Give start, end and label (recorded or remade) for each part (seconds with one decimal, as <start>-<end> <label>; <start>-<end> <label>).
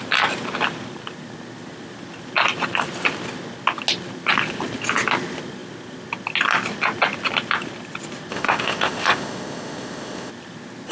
0.0-8.3 recorded; 8.3-10.3 remade; 10.3-10.9 recorded